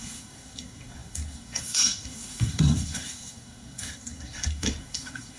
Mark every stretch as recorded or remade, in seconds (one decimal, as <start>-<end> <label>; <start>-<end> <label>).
0.0-5.4 remade